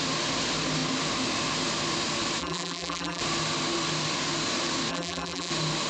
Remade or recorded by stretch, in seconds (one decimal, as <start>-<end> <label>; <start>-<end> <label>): 0.0-2.4 recorded; 2.4-3.2 remade; 3.2-4.9 recorded; 4.9-5.5 remade; 5.5-5.9 recorded